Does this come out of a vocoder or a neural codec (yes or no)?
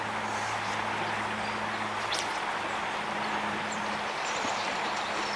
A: yes